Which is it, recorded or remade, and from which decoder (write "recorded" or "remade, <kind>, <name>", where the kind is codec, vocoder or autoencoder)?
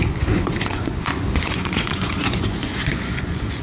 remade, vocoder, Vocos